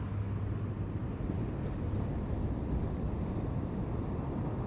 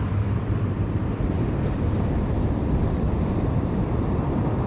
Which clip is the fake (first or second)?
second